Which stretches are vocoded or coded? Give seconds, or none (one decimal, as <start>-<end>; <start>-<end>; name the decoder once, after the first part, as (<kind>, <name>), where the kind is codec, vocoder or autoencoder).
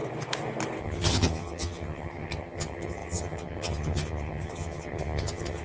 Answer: 0.8-5.6 (vocoder, HiFi-GAN)